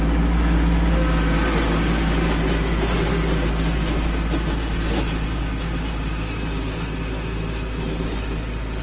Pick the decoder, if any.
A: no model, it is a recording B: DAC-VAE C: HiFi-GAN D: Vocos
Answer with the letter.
A